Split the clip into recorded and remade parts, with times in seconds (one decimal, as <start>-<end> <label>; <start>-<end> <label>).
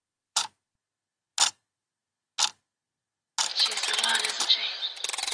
0.0-5.3 recorded